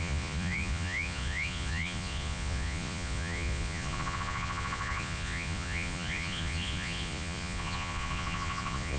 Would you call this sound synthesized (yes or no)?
yes